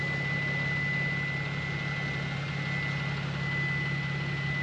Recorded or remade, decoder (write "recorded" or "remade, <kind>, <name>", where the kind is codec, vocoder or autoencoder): recorded